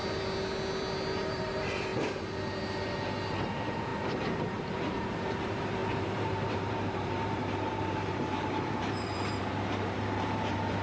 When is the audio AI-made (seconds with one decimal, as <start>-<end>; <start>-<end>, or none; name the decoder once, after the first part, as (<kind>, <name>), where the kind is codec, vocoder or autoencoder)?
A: 1.3-1.9 (vocoder, BigVGAN v2); 3.3-10.8